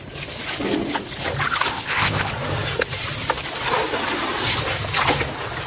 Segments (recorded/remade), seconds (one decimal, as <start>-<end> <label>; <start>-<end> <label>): 0.0-1.7 recorded; 1.7-2.3 remade; 2.3-5.7 recorded